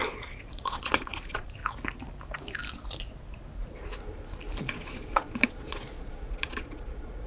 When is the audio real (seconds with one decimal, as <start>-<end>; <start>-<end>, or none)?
1.6-4.6